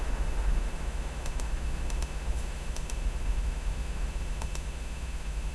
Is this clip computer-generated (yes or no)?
yes